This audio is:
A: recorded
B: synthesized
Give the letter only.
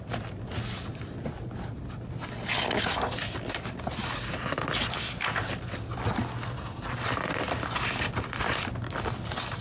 A